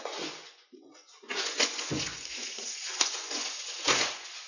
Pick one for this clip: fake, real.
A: fake